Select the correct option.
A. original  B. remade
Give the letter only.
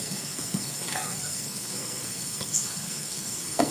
B